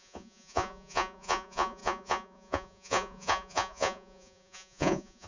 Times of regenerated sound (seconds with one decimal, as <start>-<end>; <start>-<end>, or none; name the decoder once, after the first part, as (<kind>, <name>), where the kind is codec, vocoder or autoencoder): 0.0-5.3 (vocoder, Vocos)